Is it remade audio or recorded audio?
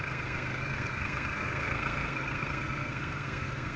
remade